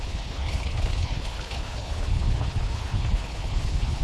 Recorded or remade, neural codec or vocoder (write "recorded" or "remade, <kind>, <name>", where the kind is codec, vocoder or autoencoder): remade, codec, HILCodec